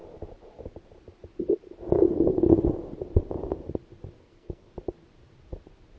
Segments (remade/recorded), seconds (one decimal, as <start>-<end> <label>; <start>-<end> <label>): 0.0-4.2 recorded; 4.2-4.7 remade; 4.7-6.0 recorded